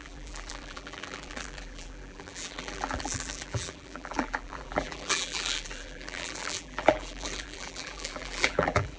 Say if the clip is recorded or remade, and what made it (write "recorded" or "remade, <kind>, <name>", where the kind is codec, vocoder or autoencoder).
remade, vocoder, BigVGAN v2